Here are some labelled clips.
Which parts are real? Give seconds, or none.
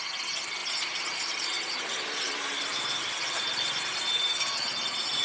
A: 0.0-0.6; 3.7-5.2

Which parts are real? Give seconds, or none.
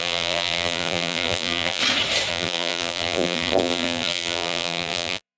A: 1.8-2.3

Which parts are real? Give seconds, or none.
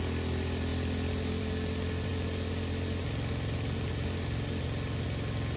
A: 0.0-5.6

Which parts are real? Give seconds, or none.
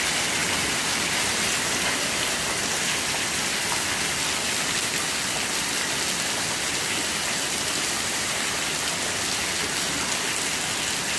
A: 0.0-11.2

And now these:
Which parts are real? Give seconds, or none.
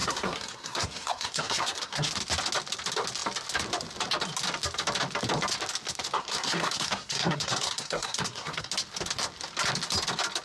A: 2.1-6.2; 8.7-10.4